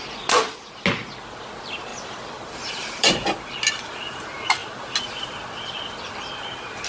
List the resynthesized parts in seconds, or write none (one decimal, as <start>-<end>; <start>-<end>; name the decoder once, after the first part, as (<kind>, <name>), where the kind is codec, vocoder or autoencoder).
1.9-2.7 (vocoder, BigVGAN v2)